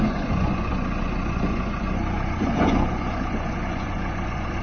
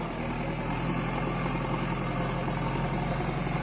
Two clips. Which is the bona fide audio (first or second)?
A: second